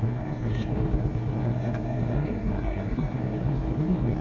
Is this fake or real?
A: fake